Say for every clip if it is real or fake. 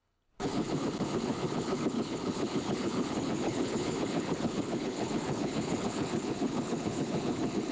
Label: fake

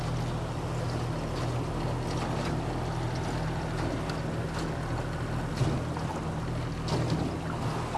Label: real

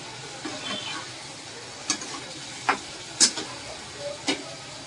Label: real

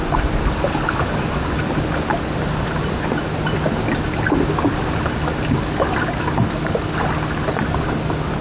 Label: real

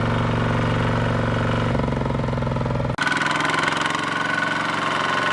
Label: real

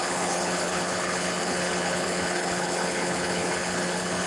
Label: fake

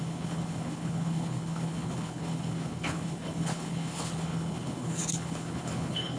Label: fake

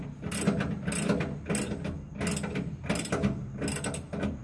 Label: real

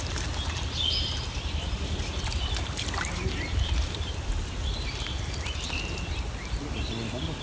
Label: real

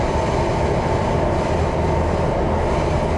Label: real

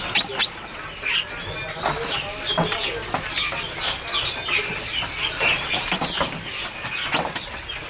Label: real